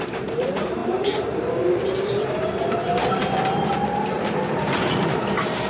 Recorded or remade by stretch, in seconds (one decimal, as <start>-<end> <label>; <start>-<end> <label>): 0.0-3.0 remade; 3.0-3.7 recorded; 3.7-5.7 remade